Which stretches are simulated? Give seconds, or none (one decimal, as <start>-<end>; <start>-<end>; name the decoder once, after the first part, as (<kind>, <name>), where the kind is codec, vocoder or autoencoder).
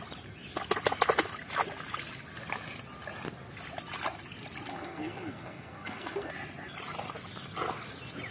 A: 4.7-6.3 (codec, SNAC)